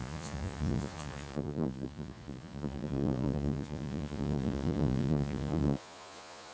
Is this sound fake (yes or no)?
yes